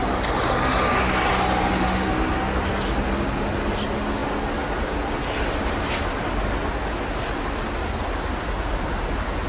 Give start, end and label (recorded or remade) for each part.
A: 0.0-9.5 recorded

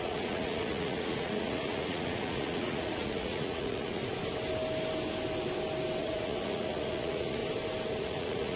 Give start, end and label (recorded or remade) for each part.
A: 0.0-4.0 remade; 4.0-6.0 recorded; 6.0-7.4 remade; 7.4-8.0 recorded; 8.0-8.6 remade

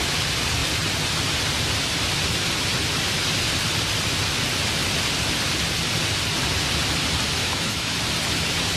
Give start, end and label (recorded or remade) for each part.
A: 0.0-7.4 recorded; 7.4-8.0 remade; 8.0-8.8 recorded

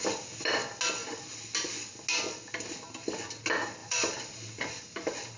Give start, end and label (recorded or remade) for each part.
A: 0.0-3.8 recorded; 3.8-5.4 remade

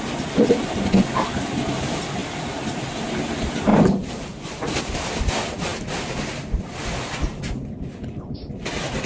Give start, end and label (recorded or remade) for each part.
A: 0.0-2.2 recorded; 2.2-3.1 remade; 3.1-3.7 recorded; 3.7-4.8 remade; 4.8-9.1 recorded

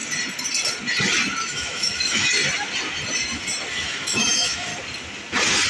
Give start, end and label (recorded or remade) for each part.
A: 0.0-1.5 recorded; 1.5-2.4 remade; 2.4-3.7 recorded; 3.7-4.7 remade; 4.7-5.7 recorded

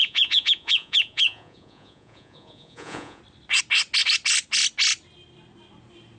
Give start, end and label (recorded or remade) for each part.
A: 0.0-3.2 remade; 3.2-6.2 recorded